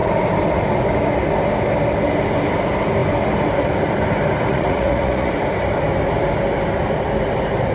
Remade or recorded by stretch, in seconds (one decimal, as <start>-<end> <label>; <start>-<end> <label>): 0.0-4.5 recorded; 4.5-5.3 remade; 5.3-7.7 recorded